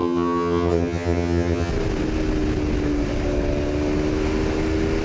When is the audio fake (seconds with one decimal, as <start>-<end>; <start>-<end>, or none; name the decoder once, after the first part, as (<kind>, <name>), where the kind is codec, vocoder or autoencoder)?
0.0-1.7 (vocoder, HiFi-GAN)